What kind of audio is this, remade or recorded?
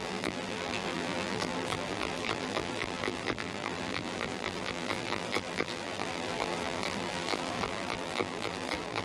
remade